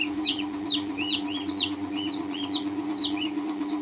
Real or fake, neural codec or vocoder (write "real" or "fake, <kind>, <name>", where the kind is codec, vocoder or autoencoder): fake, vocoder, Vocos